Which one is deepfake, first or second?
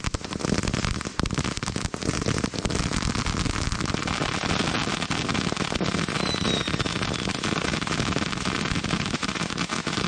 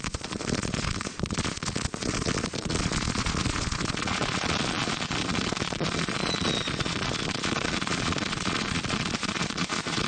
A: second